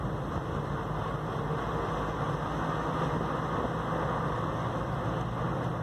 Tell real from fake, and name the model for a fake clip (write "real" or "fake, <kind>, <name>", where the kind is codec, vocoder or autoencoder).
real